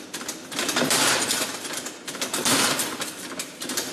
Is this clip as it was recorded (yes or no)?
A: no